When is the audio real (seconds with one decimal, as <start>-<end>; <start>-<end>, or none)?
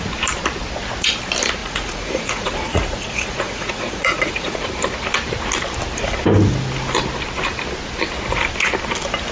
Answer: 0.0-1.6; 4.7-9.3